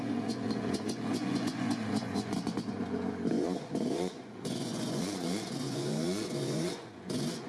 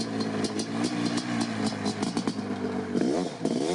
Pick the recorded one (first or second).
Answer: second